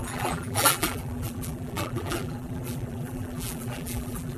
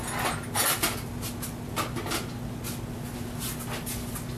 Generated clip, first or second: first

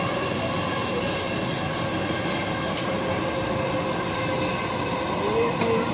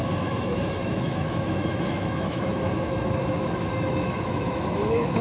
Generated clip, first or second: second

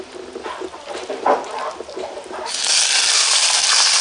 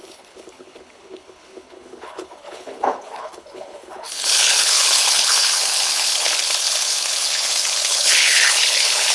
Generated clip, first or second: second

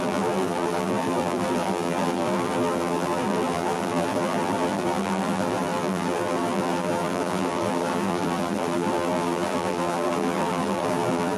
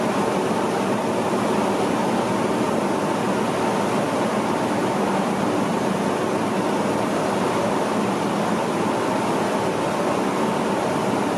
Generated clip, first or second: first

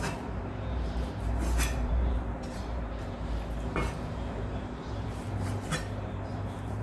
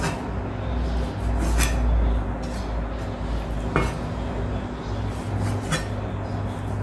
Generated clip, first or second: first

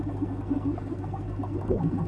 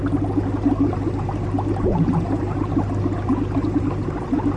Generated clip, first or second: first